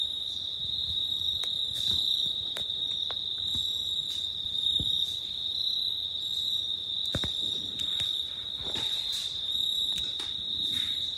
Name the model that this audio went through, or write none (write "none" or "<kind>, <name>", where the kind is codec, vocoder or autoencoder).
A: vocoder, BigVGAN v2